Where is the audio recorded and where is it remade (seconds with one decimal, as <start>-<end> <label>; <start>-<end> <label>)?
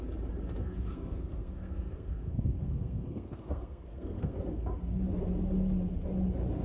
0.0-0.6 recorded; 0.6-4.4 remade; 4.4-6.6 recorded